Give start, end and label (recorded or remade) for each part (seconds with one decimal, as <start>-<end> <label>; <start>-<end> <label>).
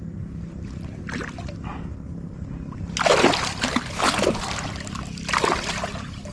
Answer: 0.0-6.3 recorded